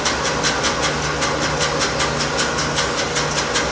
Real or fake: real